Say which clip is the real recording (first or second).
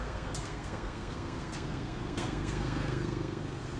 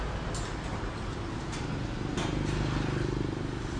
second